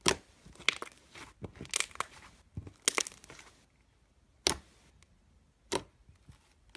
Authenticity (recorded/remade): recorded